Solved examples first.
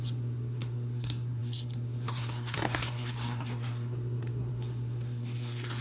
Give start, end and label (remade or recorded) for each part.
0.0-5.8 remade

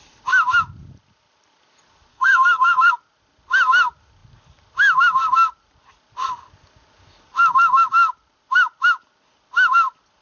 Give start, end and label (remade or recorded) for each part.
0.0-2.1 recorded; 2.1-2.9 remade; 2.9-10.2 recorded

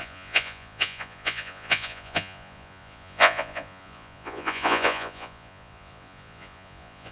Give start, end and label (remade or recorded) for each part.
0.0-7.1 remade

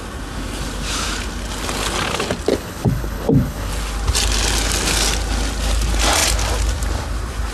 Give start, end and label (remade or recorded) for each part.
0.0-2.5 recorded; 2.5-3.7 remade; 3.7-7.5 recorded

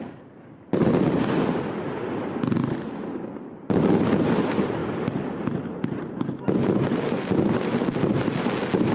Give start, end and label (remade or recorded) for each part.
0.0-8.9 recorded